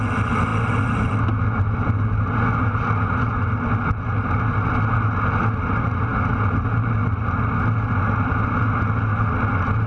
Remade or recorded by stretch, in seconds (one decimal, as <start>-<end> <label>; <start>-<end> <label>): 0.0-9.9 recorded